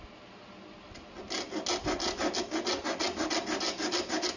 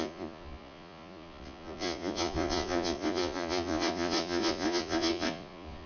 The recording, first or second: first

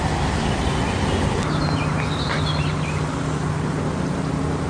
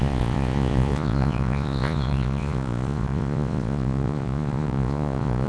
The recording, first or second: first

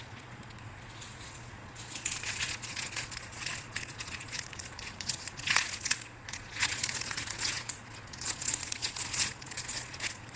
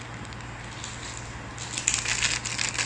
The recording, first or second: second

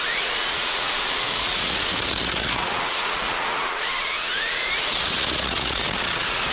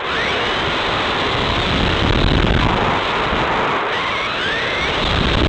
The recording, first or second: second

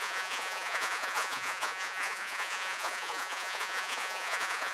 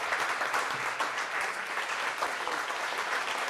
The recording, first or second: second